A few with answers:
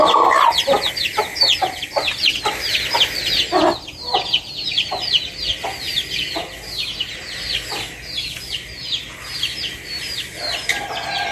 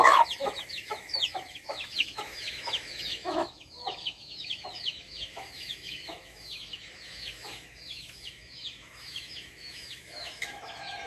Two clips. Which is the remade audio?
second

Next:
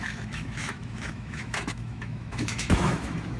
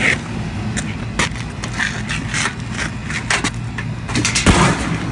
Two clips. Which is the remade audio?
first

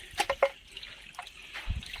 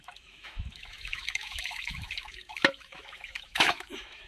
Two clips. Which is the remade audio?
second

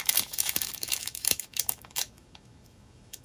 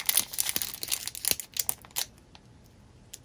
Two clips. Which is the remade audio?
first